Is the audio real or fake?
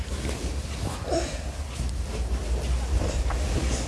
real